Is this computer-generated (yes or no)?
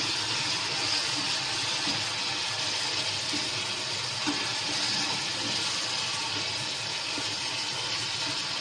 no